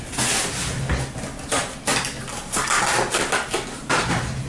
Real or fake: real